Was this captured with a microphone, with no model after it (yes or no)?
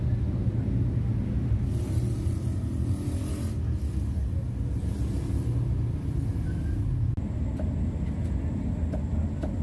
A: yes